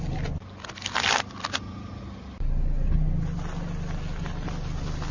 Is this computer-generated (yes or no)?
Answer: no